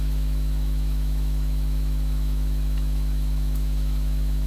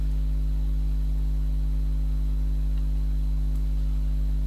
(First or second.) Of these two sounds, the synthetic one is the first